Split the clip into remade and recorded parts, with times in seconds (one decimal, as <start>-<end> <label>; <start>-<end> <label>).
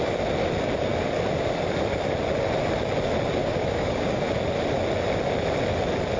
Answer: 0.0-3.4 recorded; 3.4-4.2 remade; 4.2-6.2 recorded